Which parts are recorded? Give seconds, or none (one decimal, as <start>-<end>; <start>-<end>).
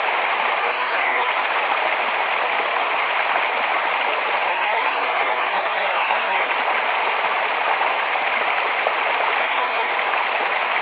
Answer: 0.0-0.6; 1.3-4.5; 6.5-9.4; 9.9-10.8